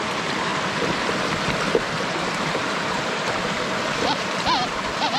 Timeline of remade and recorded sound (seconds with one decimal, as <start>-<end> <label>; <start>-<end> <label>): 0.0-0.5 remade; 0.5-1.8 recorded; 1.8-5.2 remade